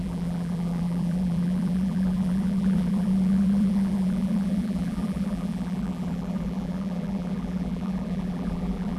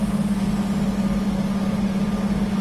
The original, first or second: second